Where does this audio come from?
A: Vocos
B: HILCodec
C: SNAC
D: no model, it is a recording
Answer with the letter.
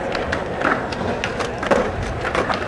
D